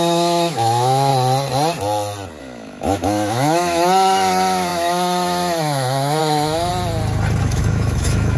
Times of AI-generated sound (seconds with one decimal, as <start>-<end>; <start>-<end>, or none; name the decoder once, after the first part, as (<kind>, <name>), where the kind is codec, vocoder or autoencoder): 0.0-1.1 (autoencoder, DAC-VAE); 2.4-6.7; 7.4-8.4